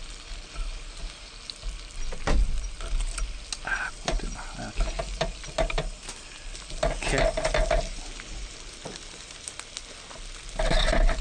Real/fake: real